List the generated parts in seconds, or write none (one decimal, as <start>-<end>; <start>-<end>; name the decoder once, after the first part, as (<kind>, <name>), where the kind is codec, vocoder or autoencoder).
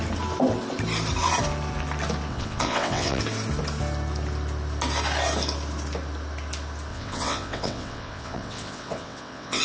2.3-3.2 (vocoder, WaveNeXt); 6.9-9.6